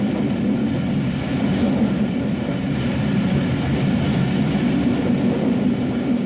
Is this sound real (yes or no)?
yes